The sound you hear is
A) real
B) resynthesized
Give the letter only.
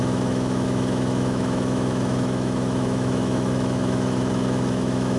B